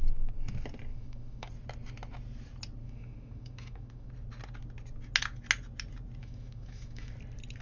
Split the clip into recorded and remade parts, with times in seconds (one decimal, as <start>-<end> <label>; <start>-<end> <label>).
0.0-0.9 recorded; 0.9-1.5 remade; 1.5-2.8 recorded; 2.8-4.1 remade; 4.1-6.2 recorded; 6.2-7.1 remade; 7.1-7.6 recorded